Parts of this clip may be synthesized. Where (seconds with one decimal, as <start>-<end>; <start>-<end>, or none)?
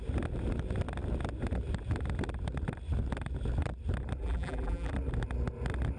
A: 4.2-4.9